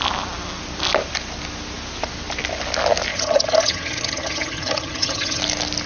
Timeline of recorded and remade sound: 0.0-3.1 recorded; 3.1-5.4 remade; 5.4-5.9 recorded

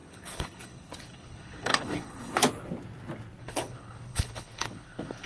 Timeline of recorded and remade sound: 0.0-2.4 remade; 2.4-3.4 recorded; 3.4-5.3 remade

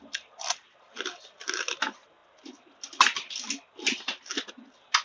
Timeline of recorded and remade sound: 0.0-5.0 recorded

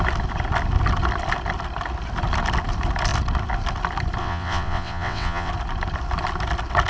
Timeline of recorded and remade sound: 0.0-4.2 recorded; 4.2-5.5 remade; 5.5-6.9 recorded